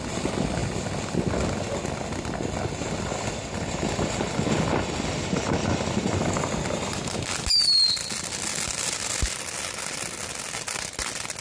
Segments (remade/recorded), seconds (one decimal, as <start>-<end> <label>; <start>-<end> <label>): 0.0-11.4 recorded